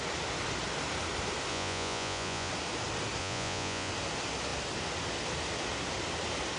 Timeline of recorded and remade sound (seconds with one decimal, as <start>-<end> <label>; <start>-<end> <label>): 0.0-1.5 recorded; 1.5-2.5 remade; 2.5-3.2 recorded; 3.2-3.9 remade; 3.9-6.6 recorded